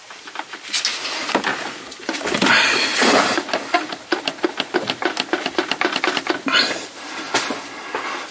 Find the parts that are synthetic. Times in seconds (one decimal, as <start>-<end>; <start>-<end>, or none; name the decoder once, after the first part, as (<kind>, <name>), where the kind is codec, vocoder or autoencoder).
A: none